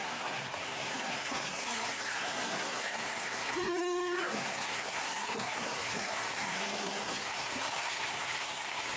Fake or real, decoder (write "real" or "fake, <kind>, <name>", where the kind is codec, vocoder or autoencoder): fake, codec, SNAC